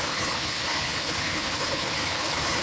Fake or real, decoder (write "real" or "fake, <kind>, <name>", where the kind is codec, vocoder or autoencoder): fake, codec, HILCodec